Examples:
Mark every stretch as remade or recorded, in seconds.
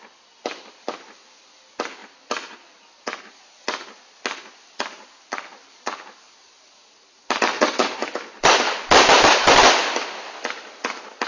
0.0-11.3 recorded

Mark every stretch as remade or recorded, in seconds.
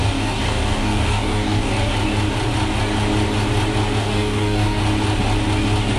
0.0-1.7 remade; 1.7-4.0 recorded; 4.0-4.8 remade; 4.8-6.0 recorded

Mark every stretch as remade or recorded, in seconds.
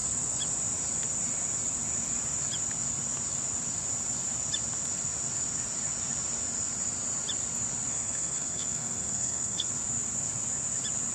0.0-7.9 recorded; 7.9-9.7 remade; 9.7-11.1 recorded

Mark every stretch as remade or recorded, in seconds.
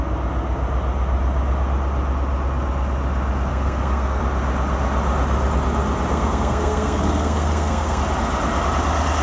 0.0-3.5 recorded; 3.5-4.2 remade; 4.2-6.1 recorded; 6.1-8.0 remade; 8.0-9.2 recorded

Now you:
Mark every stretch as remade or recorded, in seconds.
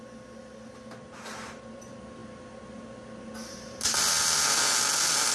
0.0-5.3 recorded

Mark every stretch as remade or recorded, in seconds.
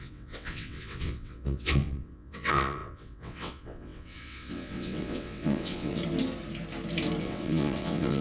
0.0-6.0 remade; 6.0-7.2 recorded; 7.2-8.2 remade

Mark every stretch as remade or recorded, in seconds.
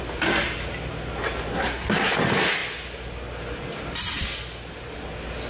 0.0-1.5 recorded; 1.5-2.1 remade; 2.1-5.5 recorded